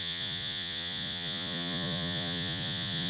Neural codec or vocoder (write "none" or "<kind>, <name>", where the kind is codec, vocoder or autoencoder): vocoder, Vocos